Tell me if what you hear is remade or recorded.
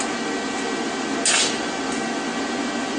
recorded